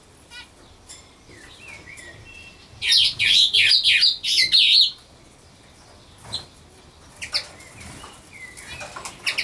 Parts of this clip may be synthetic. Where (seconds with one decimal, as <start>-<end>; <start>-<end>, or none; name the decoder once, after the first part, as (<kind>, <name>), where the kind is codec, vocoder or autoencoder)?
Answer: none